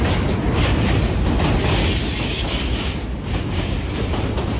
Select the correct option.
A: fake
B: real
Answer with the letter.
B